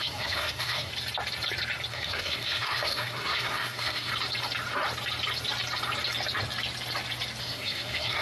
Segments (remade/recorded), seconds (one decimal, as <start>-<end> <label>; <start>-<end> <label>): 0.0-0.9 remade; 0.9-1.9 recorded; 1.9-4.1 remade; 4.1-7.4 recorded; 7.4-8.2 remade